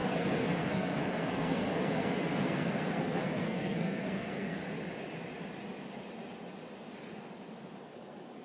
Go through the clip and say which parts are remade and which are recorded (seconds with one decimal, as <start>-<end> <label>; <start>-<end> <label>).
0.0-4.6 remade; 4.6-7.8 recorded; 7.8-8.4 remade